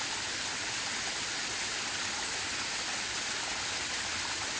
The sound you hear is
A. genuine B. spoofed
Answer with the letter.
A